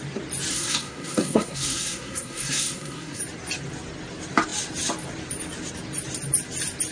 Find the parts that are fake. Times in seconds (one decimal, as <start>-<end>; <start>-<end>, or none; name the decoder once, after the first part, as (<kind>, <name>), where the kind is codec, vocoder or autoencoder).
0.5-3.2 (codec, SNAC)